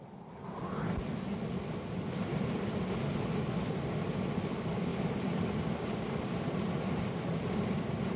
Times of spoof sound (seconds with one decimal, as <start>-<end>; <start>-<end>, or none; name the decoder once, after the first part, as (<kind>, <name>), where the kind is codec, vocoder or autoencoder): none

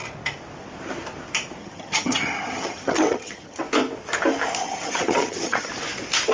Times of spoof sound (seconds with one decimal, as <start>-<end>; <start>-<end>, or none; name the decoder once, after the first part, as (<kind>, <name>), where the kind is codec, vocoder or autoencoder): 1.6-3.6 (vocoder, HiFi-GAN); 4.6-5.7

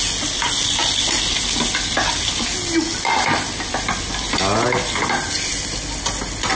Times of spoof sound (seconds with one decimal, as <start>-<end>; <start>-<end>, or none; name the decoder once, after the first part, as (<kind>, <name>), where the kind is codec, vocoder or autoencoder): none

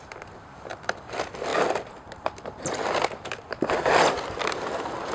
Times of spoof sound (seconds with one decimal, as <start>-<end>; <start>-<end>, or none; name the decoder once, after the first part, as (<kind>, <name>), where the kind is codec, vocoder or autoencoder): none

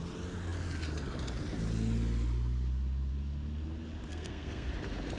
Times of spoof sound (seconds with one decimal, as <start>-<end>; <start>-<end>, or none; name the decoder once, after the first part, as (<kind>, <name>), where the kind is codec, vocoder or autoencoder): 4.1-4.7 (codec, SNAC)

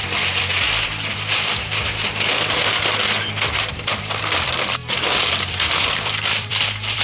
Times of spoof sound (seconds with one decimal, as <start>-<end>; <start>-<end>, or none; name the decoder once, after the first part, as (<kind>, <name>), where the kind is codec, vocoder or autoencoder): 4.2-7.0 (vocoder, BigVGAN v2)

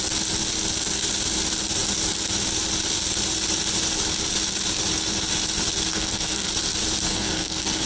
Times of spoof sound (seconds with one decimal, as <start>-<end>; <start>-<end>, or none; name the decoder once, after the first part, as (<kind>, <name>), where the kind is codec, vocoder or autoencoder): 5.9-6.5 (codec, SNAC); 7.1-7.9

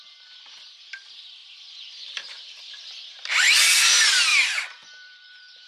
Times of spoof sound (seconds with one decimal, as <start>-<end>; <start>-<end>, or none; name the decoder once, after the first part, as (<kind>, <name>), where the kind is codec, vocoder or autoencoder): 1.4-2.7 (vocoder, BigVGAN v2); 4.3-5.7